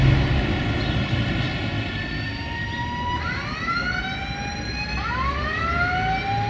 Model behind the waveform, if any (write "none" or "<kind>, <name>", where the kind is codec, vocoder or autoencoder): none